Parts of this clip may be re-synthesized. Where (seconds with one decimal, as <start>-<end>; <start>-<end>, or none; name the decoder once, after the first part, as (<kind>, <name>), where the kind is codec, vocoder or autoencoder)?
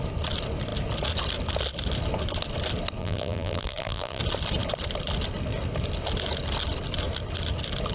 3.0-4.2 (vocoder, BigVGAN v2)